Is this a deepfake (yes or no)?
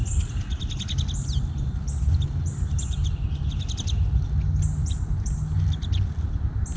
no